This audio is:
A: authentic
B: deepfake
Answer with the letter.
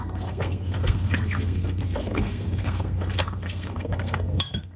B